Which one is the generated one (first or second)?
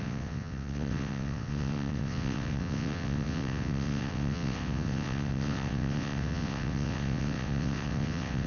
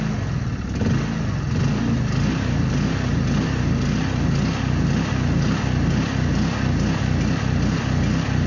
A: first